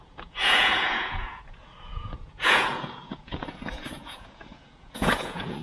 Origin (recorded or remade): remade